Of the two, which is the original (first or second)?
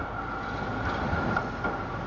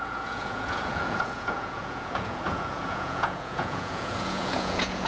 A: first